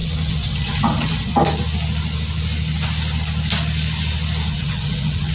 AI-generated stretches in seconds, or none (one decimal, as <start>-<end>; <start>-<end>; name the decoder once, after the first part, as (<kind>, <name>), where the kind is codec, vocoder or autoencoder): 0.0-1.3 (vocoder, WaveNeXt); 4.5-5.3